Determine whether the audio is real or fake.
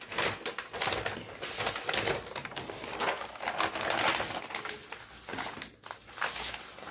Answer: real